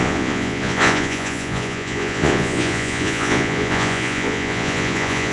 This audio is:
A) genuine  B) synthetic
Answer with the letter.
B